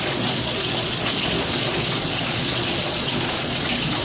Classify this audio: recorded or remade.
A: remade